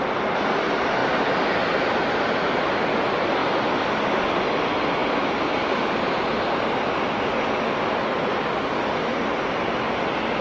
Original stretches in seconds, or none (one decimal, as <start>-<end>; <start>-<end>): 0.0-3.4; 4.0-10.4